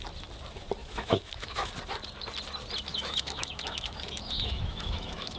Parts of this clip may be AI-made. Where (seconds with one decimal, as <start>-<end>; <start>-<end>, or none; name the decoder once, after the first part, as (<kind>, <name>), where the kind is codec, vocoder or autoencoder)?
0.8-1.7 (autoencoder, DAC-VAE); 2.9-5.4